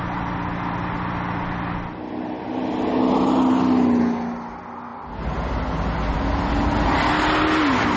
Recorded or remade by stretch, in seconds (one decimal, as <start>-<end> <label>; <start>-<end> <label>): 0.0-8.0 recorded